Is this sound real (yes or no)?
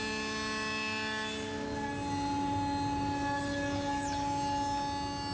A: yes